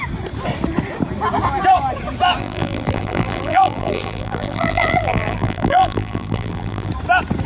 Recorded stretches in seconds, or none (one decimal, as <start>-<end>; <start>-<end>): 0.0-2.4; 6.9-7.5